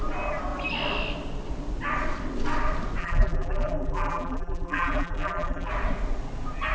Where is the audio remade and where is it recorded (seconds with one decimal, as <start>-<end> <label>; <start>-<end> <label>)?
0.0-3.0 recorded; 3.0-5.7 remade; 5.7-6.7 recorded